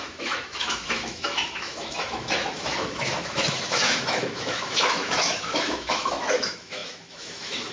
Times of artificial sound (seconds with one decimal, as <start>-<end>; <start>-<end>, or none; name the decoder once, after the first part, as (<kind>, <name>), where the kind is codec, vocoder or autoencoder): 0.0-7.7 (autoencoder, DAC-VAE)